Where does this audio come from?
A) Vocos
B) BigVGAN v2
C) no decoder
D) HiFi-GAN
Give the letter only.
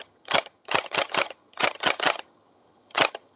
D